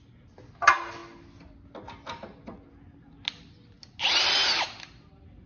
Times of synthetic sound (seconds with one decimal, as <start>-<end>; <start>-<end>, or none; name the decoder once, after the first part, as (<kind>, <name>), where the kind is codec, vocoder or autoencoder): none